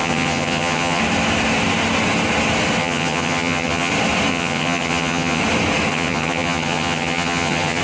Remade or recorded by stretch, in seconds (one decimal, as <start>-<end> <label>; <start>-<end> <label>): 0.0-1.0 remade; 1.0-2.8 recorded; 2.8-3.9 remade; 3.9-4.3 recorded; 4.3-5.4 remade; 5.4-5.9 recorded; 5.9-7.8 remade